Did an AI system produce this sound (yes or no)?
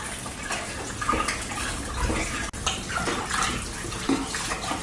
no